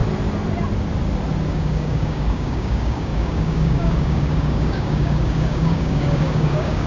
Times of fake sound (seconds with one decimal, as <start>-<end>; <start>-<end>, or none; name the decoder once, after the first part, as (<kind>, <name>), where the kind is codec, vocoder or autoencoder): 1.5-6.9 (codec, DAC)